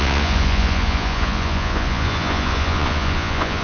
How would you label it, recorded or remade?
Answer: remade